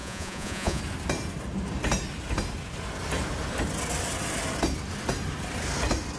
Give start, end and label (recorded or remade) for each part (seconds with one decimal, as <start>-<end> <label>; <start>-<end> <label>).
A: 0.0-0.8 remade; 0.8-6.2 recorded